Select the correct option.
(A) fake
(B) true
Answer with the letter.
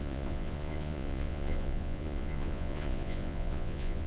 A